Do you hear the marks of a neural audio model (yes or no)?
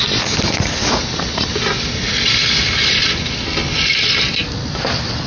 no